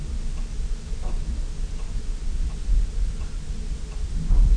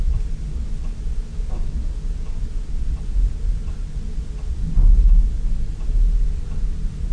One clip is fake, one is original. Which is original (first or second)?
second